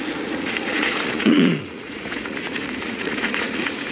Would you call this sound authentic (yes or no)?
no